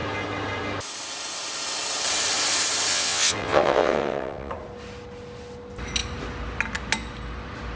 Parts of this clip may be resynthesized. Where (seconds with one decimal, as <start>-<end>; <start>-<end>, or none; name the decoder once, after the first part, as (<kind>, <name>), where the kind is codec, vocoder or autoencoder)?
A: 2.9-4.5 (vocoder, WaveNeXt)